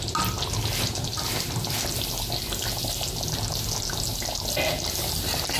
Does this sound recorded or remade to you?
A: recorded